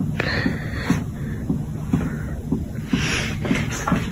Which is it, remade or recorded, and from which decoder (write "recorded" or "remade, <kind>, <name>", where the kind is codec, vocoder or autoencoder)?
recorded